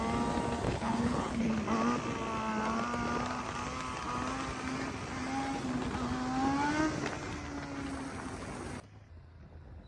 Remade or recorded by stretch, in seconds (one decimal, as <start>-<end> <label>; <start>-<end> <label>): 0.0-0.7 recorded; 0.7-1.5 remade; 1.5-9.9 recorded